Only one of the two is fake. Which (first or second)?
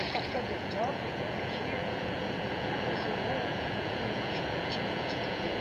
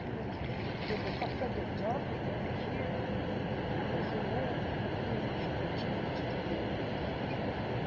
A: first